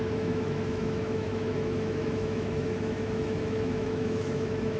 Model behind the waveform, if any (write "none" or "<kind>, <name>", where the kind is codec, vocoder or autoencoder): autoencoder, DAC-VAE